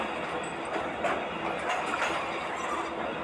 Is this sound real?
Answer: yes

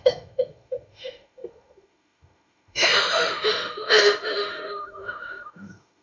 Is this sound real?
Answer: no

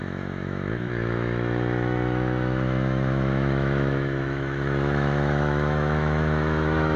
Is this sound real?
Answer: no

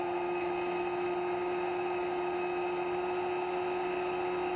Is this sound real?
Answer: yes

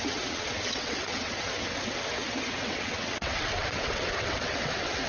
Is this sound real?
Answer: no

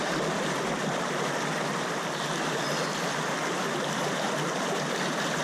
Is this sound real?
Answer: yes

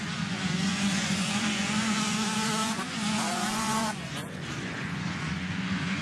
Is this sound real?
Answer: no